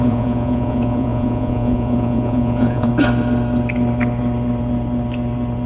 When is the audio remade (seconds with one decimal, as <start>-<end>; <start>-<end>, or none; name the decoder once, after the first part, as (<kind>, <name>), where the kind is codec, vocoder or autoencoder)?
0.0-2.9 (vocoder, Vocos)